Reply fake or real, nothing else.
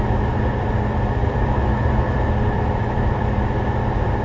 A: fake